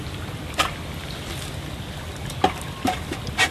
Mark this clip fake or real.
real